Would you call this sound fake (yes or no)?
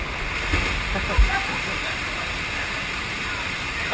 no